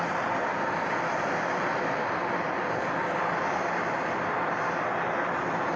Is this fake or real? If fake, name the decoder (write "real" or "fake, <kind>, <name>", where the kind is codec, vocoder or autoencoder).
real